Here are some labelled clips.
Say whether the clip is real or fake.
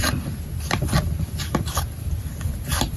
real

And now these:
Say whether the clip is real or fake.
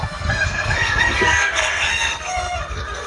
fake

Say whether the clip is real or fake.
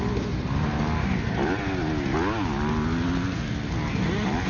real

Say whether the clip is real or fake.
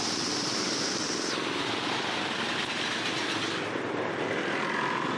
real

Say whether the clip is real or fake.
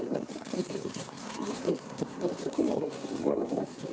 fake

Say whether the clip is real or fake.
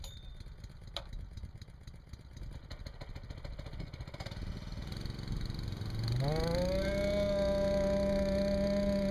real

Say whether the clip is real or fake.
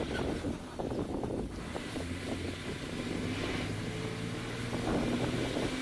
real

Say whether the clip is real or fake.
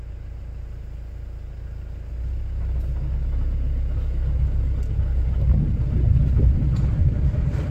real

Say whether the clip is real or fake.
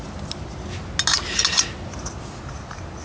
real